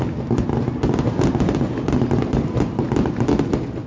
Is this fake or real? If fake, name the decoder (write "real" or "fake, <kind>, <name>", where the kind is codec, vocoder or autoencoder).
real